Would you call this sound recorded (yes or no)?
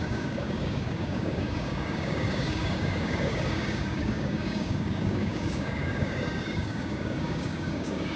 no